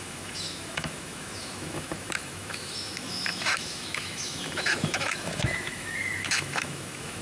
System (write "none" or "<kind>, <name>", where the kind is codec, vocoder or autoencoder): autoencoder, DAC-VAE